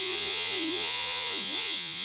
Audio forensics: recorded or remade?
remade